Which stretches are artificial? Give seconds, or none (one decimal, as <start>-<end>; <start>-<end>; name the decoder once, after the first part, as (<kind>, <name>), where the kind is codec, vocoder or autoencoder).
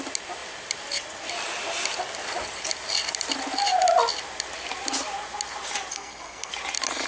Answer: 5.9-6.5 (codec, SNAC)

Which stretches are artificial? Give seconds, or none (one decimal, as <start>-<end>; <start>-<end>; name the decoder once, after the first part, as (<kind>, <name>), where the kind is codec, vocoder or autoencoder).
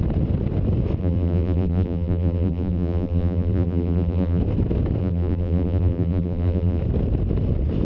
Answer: 1.0-4.4 (vocoder, BigVGAN v2); 5.0-6.8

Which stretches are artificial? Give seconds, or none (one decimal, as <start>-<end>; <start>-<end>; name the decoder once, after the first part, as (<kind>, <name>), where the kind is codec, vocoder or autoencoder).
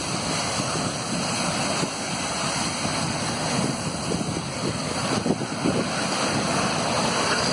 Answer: 2.9-5.6 (vocoder, BigVGAN v2)